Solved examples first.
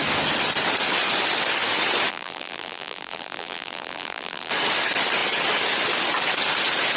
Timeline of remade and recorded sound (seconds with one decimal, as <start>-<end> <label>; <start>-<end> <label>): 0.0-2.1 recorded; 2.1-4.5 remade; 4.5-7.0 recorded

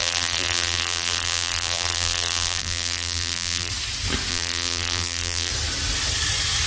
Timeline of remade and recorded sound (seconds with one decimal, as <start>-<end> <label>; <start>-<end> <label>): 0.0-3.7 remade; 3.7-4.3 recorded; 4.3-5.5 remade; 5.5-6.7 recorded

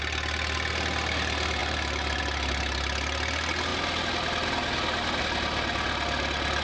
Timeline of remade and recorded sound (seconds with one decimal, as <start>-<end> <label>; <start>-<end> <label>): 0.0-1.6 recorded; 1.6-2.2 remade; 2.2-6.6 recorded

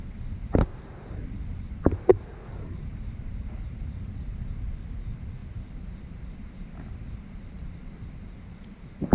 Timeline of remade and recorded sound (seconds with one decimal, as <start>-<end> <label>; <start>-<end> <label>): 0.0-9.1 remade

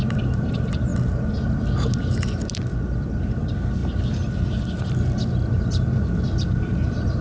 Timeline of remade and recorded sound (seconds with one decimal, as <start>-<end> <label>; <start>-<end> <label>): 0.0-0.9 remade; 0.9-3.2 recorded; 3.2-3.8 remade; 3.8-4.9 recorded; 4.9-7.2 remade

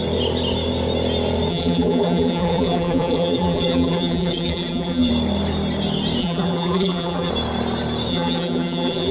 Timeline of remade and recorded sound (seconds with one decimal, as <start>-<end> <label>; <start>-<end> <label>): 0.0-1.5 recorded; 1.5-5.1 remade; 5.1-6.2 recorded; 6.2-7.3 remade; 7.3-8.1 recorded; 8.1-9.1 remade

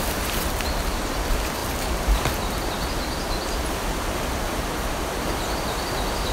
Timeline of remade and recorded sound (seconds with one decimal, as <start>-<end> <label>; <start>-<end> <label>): 0.0-6.3 remade

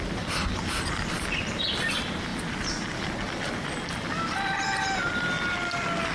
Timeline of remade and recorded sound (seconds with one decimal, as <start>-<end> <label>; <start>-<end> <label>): 0.0-6.1 recorded